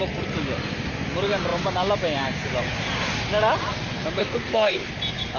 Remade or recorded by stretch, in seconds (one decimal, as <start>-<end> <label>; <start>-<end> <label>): 0.0-4.2 recorded; 4.2-4.9 remade; 4.9-5.4 recorded